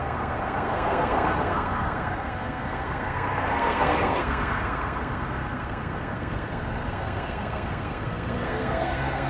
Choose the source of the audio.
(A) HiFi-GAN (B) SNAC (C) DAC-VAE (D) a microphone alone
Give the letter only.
B